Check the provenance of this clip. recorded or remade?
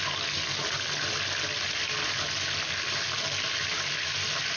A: recorded